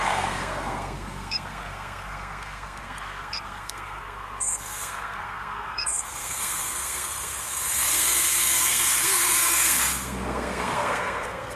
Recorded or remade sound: remade